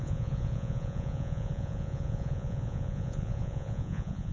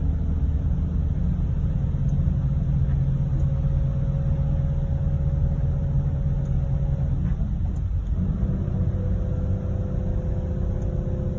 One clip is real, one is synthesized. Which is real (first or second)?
second